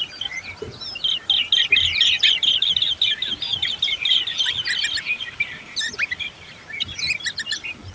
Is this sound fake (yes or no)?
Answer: yes